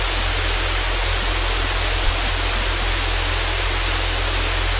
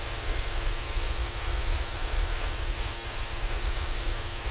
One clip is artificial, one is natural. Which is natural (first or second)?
first